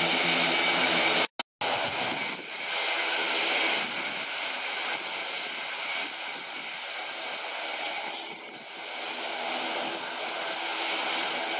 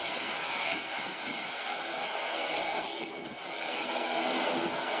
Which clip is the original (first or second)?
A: first